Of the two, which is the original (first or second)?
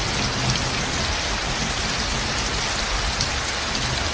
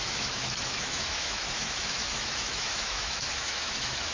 first